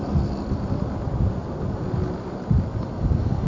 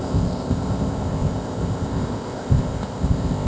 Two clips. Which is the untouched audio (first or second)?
first